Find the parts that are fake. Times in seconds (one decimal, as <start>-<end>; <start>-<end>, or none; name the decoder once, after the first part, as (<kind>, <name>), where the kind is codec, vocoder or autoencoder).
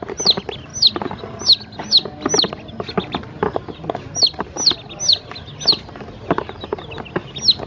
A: none